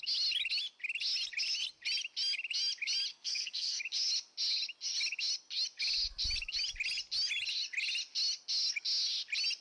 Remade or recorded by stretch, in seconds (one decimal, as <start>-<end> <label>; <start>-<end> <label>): 0.0-3.1 recorded; 3.1-3.8 remade; 3.8-9.6 recorded